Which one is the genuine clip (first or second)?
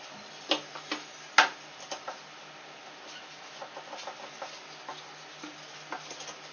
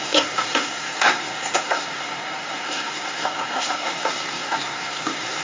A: first